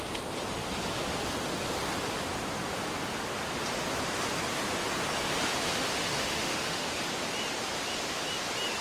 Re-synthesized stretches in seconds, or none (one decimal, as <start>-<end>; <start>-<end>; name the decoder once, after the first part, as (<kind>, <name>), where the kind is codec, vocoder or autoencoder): 6.0-7.0 (autoencoder, DAC-VAE)